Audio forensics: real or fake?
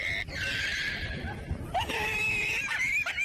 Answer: fake